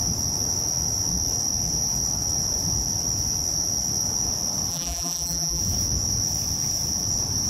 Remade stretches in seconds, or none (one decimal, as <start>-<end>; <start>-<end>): 4.7-5.6